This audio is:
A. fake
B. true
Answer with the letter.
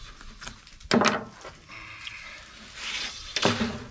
B